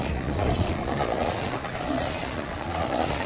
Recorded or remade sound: remade